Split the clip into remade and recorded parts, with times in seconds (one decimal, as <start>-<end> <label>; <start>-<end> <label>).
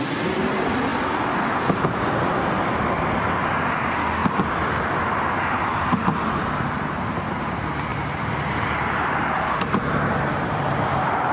0.0-7.9 recorded; 7.9-11.3 remade